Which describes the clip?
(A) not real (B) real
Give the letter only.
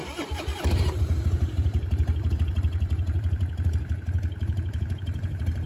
A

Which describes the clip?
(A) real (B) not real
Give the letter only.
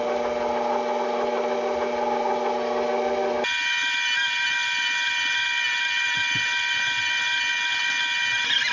A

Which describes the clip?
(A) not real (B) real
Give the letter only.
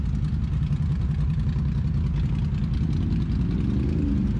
B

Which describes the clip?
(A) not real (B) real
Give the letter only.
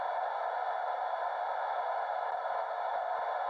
B